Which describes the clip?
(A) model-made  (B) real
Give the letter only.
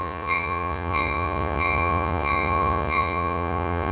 A